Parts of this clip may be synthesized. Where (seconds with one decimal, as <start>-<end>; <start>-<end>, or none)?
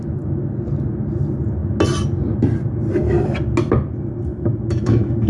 4.3-5.3